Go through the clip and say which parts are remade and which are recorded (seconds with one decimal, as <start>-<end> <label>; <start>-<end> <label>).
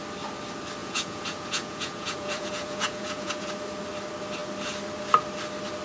0.0-0.8 recorded; 0.8-3.5 remade; 3.5-5.8 recorded